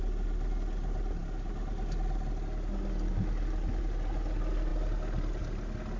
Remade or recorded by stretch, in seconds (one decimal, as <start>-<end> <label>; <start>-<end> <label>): 0.0-6.0 recorded